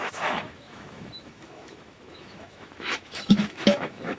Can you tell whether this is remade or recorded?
remade